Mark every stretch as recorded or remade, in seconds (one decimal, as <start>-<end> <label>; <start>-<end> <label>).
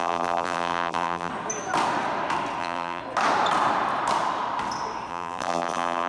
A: 0.0-1.3 remade; 1.3-2.6 recorded; 2.6-3.0 remade; 3.0-5.1 recorded; 5.1-6.1 remade